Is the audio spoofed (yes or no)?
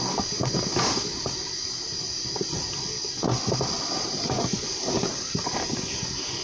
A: no